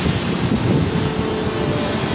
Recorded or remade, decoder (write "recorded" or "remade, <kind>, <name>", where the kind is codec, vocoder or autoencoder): recorded